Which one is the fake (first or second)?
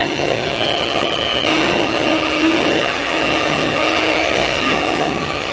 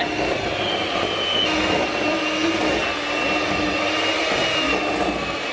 first